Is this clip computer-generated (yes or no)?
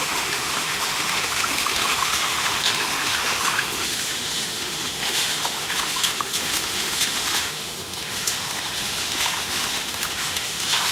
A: yes